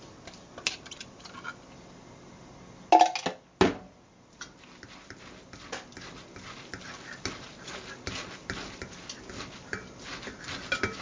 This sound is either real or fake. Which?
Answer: real